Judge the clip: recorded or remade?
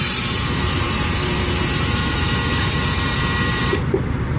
remade